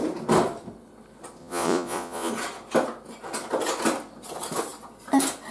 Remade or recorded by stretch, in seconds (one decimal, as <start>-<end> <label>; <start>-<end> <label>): 0.0-1.4 recorded; 1.4-2.3 remade; 2.3-5.5 recorded